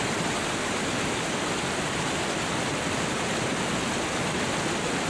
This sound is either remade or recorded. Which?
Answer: recorded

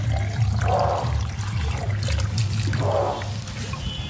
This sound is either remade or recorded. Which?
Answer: recorded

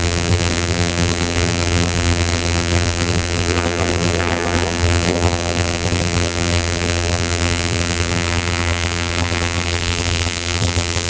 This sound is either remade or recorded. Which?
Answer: remade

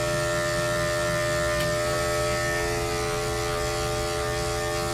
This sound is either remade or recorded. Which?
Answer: recorded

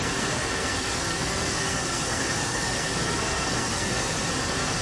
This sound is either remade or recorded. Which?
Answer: remade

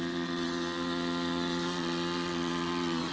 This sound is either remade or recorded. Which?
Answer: remade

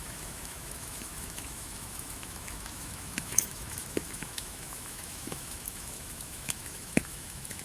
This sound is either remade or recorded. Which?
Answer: remade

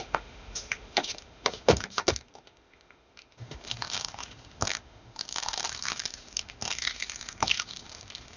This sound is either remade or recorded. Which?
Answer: remade